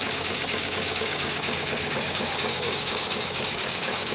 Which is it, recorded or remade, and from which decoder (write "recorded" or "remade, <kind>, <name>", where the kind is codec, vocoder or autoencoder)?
remade, codec, DAC